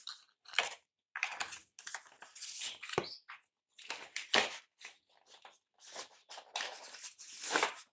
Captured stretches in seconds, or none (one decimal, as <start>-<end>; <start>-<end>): 0.0-7.9